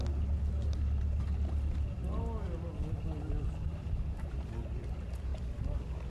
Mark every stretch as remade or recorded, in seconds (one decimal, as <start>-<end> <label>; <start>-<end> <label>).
0.0-6.1 recorded